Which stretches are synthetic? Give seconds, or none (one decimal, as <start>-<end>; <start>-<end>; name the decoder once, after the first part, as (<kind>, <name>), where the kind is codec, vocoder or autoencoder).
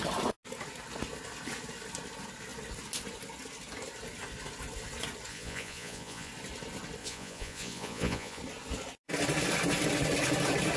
5.3-6.3 (vocoder, Vocos); 7.0-8.4